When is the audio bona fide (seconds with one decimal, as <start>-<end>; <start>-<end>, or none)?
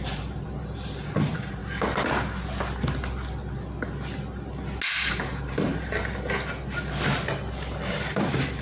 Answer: 1.6-5.1; 5.7-7.9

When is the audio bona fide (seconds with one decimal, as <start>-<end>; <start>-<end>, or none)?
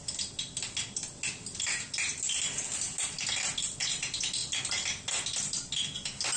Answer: 0.0-6.4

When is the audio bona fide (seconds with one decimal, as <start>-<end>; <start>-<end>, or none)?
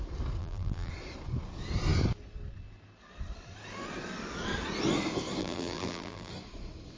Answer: 0.0-0.4; 0.9-5.4; 6.3-7.0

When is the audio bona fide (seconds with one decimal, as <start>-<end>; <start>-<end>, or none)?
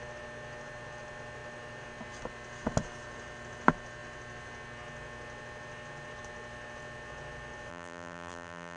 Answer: 0.0-7.7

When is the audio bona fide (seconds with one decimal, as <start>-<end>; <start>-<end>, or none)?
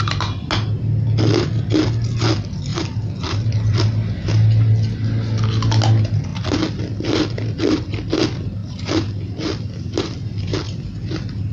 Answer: 0.0-2.7; 4.3-11.5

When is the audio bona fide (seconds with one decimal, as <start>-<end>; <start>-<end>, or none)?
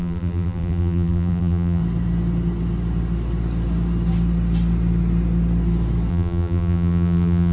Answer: 1.8-6.1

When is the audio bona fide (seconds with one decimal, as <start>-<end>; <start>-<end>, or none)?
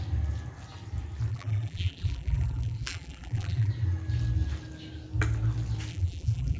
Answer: 0.0-1.3; 3.7-5.9